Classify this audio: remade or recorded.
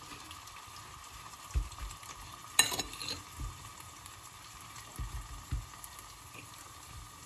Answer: recorded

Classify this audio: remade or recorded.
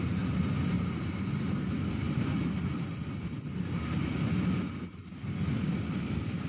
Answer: recorded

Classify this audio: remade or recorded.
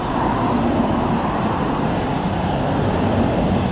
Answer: recorded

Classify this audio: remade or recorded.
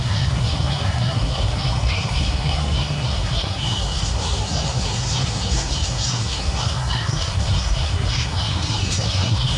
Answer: remade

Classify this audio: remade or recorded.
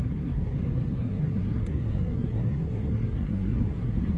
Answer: remade